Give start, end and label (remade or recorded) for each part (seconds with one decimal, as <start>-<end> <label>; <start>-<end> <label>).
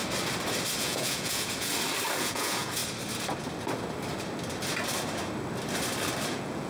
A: 0.0-0.8 recorded; 0.8-1.7 remade; 1.7-2.2 recorded; 2.2-2.8 remade; 2.8-6.3 recorded; 6.3-6.7 remade